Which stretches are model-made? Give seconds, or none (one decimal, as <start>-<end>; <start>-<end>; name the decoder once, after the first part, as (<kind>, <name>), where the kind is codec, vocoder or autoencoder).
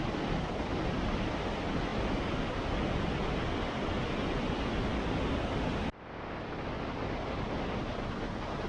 none